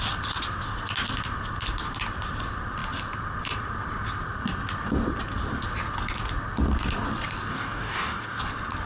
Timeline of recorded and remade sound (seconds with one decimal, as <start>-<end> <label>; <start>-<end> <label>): 0.0-7.5 recorded; 7.5-8.4 remade; 8.4-8.9 recorded